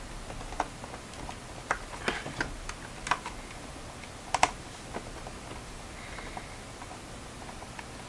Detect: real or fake real